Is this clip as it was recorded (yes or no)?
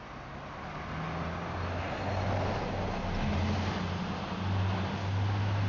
yes